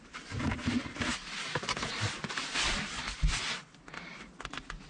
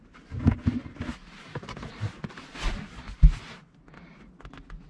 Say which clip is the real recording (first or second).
second